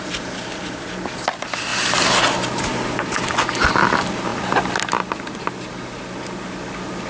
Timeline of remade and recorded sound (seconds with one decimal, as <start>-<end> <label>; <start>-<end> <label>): 0.0-7.1 recorded